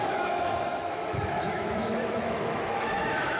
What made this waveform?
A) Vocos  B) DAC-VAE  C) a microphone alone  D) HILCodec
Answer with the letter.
B